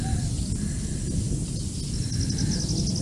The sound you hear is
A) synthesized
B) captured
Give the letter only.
B